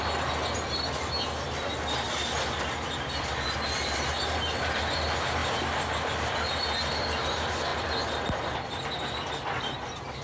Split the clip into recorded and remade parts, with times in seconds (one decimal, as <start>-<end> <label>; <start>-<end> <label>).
0.0-10.2 recorded